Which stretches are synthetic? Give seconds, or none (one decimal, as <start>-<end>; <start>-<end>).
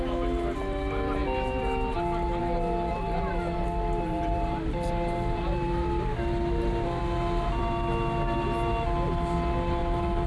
2.9-7.0; 9.8-10.3